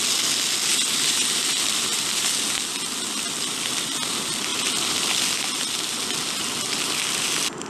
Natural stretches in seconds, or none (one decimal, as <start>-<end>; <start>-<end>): 0.0-0.7; 2.4-4.5; 5.9-7.7